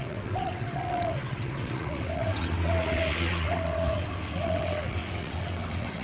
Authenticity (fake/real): fake